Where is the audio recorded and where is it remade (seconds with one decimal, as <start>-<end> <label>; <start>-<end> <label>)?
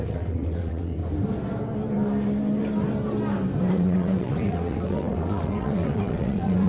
0.0-1.0 remade; 1.0-3.7 recorded; 3.7-6.7 remade